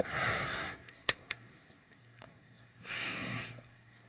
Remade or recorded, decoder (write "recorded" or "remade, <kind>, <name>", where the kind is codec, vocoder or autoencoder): remade, codec, SNAC